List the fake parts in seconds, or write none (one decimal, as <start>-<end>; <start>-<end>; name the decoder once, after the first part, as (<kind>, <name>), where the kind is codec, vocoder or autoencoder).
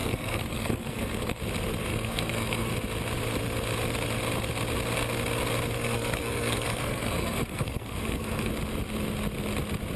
0.0-1.4 (codec, SNAC); 1.9-2.7; 5.8-8.5